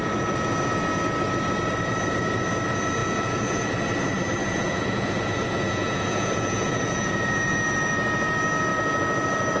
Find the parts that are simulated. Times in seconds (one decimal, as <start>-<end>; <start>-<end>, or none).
3.0-3.7; 4.4-7.7